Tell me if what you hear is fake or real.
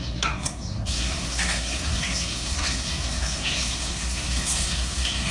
fake